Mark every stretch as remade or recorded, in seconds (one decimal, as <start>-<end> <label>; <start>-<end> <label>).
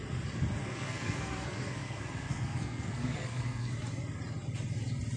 0.0-0.6 recorded; 0.6-3.7 remade; 3.7-5.2 recorded